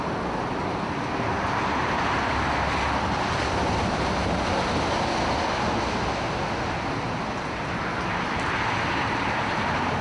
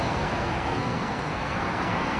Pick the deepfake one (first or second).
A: second